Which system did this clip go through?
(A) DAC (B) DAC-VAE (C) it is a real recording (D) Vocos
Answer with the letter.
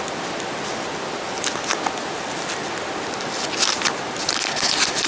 C